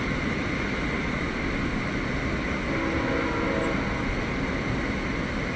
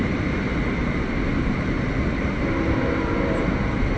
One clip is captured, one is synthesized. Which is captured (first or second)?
first